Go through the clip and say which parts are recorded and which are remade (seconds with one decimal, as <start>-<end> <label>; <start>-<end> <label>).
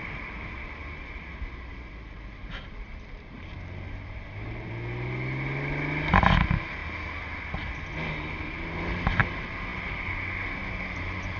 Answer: 0.0-0.8 recorded; 0.8-4.7 remade; 4.7-11.4 recorded